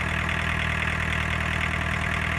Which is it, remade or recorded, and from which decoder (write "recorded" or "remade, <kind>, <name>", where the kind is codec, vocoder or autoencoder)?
recorded